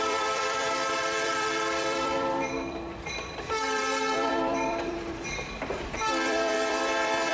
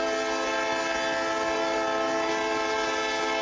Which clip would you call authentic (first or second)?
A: second